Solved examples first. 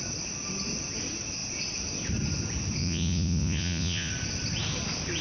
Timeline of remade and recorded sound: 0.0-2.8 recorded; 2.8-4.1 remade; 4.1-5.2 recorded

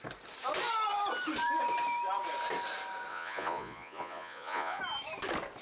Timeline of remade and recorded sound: 0.0-3.1 recorded; 3.1-4.8 remade; 4.8-5.6 recorded

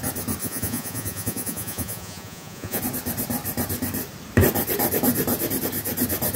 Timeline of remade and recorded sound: 0.0-0.4 recorded; 0.4-2.8 remade; 2.8-6.4 recorded

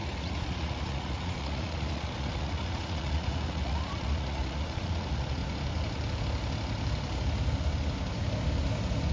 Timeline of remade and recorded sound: 0.0-5.4 remade; 5.4-9.1 recorded

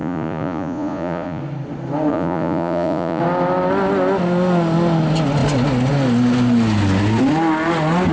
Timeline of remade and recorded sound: 0.0-1.4 remade; 1.4-2.1 recorded; 2.1-3.2 remade; 3.2-8.1 recorded

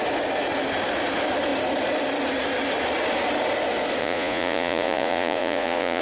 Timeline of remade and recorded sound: 0.0-4.0 recorded; 4.0-6.0 remade